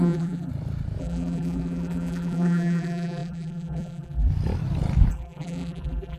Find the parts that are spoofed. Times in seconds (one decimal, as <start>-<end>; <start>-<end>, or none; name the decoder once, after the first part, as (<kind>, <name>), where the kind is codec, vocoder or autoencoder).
0.0-0.5 (vocoder, BigVGAN v2); 1.0-4.3; 5.1-6.2